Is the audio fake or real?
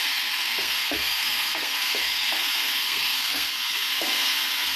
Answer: fake